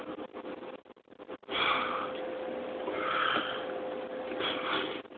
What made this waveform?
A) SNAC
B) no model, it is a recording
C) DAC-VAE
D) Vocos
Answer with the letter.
B